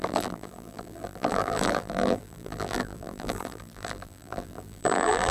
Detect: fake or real fake